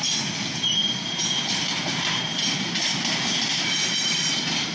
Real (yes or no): yes